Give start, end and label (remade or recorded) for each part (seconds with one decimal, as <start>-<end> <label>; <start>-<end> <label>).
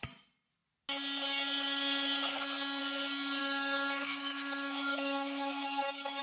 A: 0.0-3.4 recorded; 3.4-6.2 remade